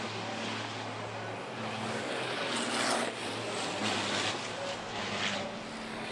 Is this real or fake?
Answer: real